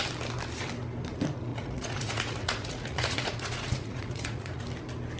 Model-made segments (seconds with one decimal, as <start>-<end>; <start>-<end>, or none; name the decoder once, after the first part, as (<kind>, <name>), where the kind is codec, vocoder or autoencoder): 1.5-4.6 (vocoder, Vocos)